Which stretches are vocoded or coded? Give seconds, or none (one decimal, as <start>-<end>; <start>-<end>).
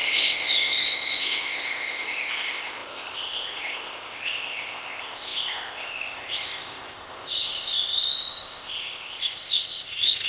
0.0-10.3